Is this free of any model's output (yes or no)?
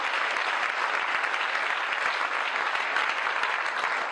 yes